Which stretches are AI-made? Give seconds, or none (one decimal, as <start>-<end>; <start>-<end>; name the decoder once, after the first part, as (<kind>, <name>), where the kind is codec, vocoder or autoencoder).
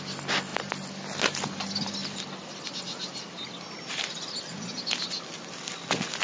none